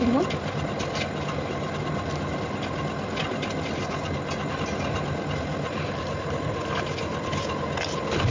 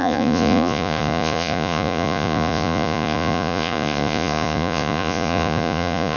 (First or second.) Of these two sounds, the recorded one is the first